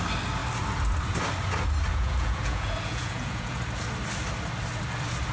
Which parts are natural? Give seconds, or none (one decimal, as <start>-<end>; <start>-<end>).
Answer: 0.0-1.9; 3.6-5.3